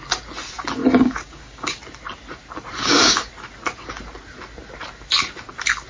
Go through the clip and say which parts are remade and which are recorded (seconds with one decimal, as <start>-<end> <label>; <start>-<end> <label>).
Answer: 0.0-0.8 recorded; 0.8-1.8 remade; 1.8-2.8 recorded; 2.8-3.3 remade; 3.3-5.9 recorded